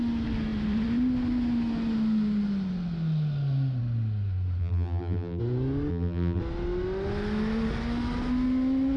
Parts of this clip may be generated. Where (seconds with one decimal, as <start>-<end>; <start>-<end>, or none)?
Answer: 4.6-5.4; 5.9-6.4